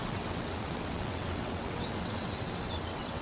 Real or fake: fake